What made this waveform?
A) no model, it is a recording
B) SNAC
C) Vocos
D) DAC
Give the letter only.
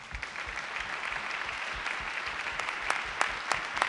A